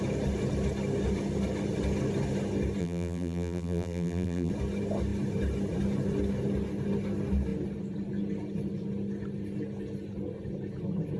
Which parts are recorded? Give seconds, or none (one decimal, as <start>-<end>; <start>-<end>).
0.0-2.8; 4.5-11.2